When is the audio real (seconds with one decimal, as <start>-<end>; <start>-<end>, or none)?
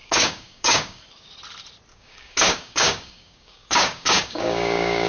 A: 1.0-1.9